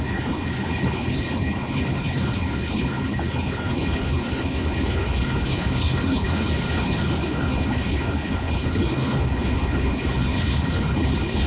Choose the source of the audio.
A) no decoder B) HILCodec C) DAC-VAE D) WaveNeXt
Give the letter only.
B